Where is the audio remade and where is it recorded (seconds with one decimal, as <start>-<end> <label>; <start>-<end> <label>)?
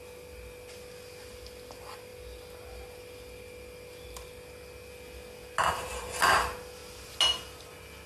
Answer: 0.0-8.1 recorded